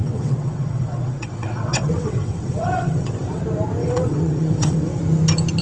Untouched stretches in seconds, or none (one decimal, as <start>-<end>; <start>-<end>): 3.4-3.8; 5.0-5.6